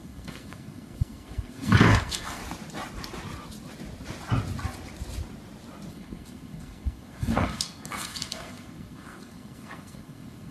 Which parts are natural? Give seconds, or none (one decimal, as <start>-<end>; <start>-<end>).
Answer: 2.4-5.9